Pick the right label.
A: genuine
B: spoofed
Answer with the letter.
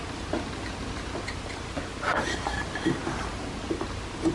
A